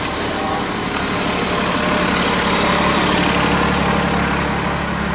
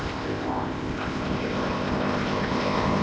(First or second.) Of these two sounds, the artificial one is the second